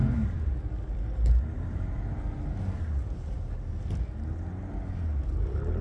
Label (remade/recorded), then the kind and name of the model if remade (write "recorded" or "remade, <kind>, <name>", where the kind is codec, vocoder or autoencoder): recorded